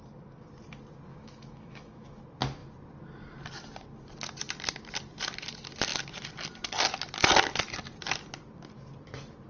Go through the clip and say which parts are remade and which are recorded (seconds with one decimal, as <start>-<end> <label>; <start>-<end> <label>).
0.0-1.1 recorded; 1.1-2.2 remade; 2.2-9.5 recorded